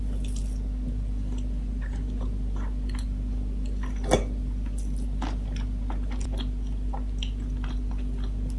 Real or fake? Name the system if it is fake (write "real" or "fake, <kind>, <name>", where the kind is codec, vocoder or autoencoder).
real